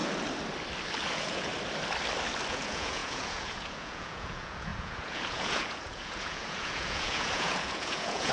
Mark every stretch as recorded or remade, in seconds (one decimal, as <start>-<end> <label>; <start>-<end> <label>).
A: 0.0-1.1 recorded; 1.1-1.5 remade; 1.5-2.5 recorded; 2.5-8.3 remade